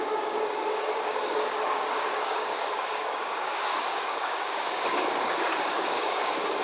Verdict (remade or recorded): remade